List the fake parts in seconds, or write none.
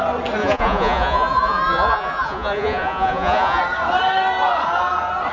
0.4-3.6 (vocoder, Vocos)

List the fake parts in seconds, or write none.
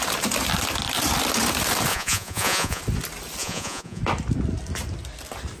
1.9-2.8 (vocoder, Vocos); 3.4-4.0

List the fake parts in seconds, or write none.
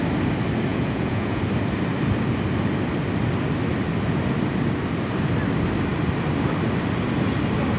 0.7-1.4 (vocoder, Vocos)